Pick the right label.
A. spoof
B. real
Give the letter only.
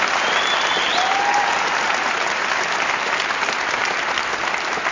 B